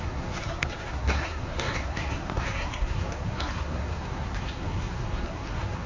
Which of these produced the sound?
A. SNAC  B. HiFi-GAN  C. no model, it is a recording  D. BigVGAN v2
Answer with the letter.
A